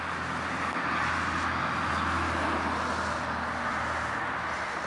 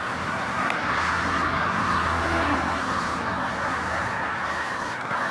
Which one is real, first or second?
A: first